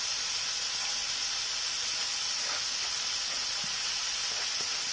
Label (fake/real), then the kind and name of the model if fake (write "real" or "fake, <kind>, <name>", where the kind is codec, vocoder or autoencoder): real